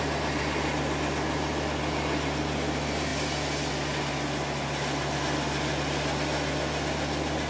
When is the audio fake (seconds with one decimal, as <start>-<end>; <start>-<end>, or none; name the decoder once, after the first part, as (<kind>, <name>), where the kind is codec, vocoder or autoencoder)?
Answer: none